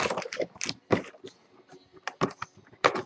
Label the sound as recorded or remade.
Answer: remade